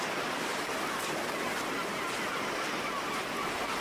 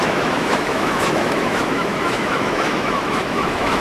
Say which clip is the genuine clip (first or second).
first